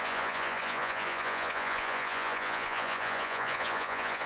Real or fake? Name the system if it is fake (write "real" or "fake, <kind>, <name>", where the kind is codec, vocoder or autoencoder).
fake, vocoder, Vocos